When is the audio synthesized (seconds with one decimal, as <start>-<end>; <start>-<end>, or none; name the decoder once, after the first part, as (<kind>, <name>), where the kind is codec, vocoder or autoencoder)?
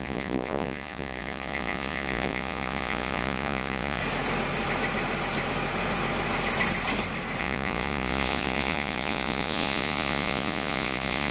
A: 0.0-4.0 (vocoder, Vocos); 7.4-11.3